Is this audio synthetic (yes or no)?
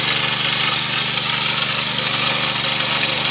no